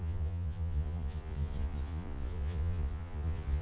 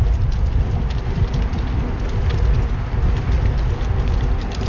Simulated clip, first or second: first